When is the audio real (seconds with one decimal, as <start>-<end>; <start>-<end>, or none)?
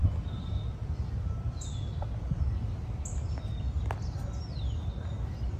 0.0-5.6